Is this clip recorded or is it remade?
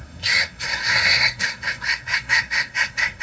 remade